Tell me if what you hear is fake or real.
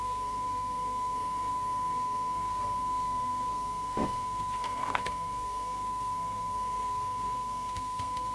fake